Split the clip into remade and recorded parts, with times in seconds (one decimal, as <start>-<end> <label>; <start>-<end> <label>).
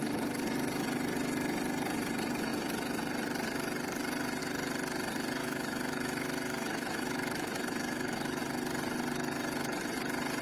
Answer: 0.0-5.4 recorded; 5.4-8.4 remade; 8.4-10.4 recorded